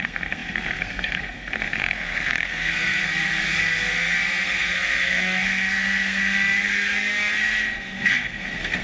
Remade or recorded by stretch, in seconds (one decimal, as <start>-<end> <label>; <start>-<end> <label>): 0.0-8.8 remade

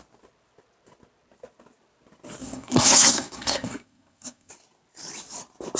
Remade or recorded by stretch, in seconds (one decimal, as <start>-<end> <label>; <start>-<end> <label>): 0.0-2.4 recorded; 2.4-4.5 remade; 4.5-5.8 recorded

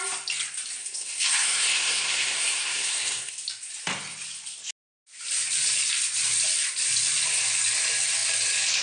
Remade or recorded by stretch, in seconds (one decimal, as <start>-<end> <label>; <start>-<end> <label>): 0.0-0.8 recorded; 0.8-3.3 remade; 3.3-8.8 recorded